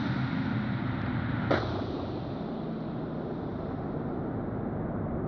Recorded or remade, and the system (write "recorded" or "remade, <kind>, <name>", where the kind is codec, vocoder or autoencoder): recorded